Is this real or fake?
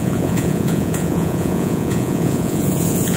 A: fake